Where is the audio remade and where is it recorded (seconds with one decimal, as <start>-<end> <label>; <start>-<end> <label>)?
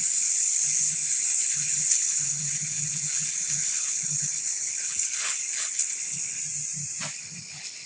0.0-6.4 remade; 6.4-7.1 recorded; 7.1-7.9 remade